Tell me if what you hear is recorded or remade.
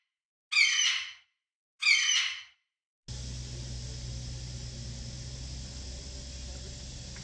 recorded